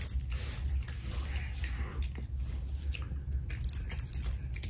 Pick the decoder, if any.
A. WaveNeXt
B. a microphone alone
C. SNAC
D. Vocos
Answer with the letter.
B